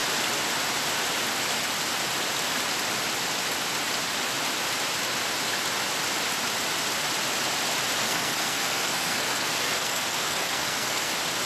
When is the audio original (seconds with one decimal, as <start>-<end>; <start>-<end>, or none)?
0.0-8.0; 11.1-11.5